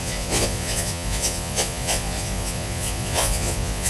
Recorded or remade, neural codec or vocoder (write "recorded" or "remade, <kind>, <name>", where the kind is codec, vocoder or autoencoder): remade, vocoder, Vocos